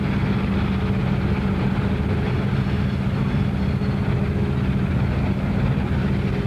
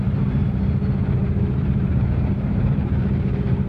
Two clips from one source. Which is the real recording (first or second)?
first